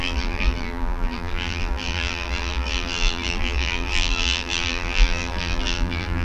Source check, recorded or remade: remade